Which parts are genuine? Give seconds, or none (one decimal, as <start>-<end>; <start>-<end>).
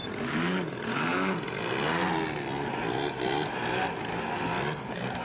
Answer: 0.0-5.2